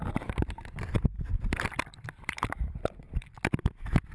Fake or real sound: fake